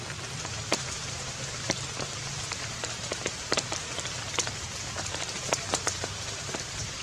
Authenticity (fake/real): fake